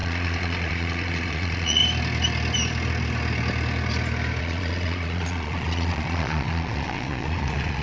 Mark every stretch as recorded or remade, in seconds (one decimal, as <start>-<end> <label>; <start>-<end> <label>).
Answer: 0.0-1.8 remade; 1.8-4.4 recorded; 4.4-7.8 remade